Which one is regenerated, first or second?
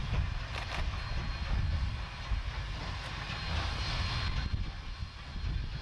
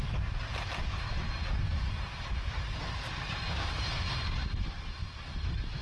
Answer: second